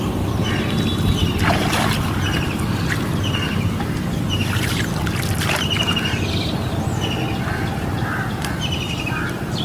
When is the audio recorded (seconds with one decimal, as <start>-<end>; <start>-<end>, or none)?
0.4-1.1